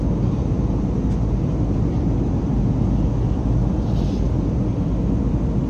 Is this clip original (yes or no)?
yes